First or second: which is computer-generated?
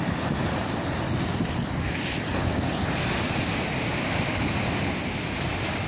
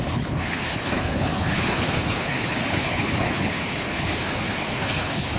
second